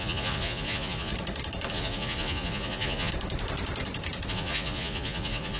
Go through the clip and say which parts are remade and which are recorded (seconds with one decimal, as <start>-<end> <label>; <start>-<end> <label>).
0.0-1.1 remade; 1.1-1.7 recorded; 1.7-3.1 remade; 3.1-4.3 recorded; 4.3-5.6 remade